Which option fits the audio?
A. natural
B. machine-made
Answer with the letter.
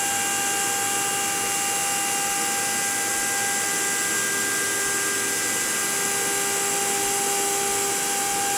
A